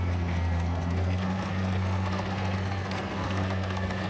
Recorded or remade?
remade